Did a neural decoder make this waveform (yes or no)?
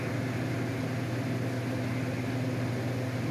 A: no